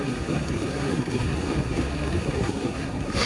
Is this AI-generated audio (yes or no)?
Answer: yes